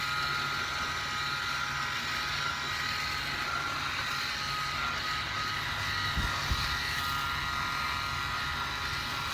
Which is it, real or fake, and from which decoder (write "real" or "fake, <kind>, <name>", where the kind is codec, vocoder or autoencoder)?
real